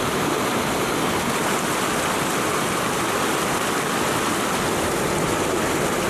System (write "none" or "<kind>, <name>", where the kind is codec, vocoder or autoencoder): none